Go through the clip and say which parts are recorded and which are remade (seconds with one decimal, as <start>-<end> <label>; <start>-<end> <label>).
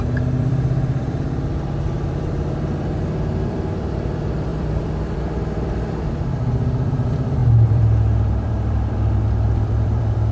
0.0-10.3 remade